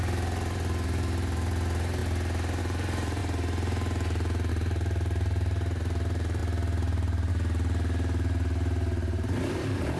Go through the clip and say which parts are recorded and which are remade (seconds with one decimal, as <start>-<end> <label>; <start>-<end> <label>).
0.0-2.0 remade; 2.0-2.6 recorded; 2.6-3.2 remade; 3.2-4.5 recorded; 4.5-6.4 remade; 6.4-7.3 recorded; 7.3-10.0 remade